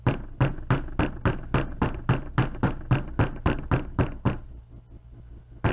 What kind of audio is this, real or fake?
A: real